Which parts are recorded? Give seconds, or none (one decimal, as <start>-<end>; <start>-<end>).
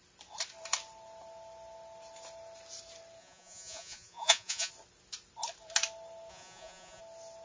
0.0-3.2; 4.7-6.3; 7.0-7.4